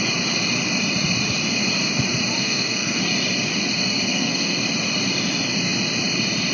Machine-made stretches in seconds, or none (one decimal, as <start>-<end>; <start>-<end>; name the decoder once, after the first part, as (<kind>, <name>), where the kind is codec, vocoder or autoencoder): 2.4-3.0 (codec, SNAC); 4.1-4.6